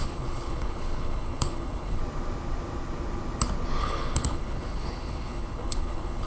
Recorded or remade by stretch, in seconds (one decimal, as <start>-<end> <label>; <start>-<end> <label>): 0.0-2.0 remade; 2.0-3.8 recorded; 3.8-6.3 remade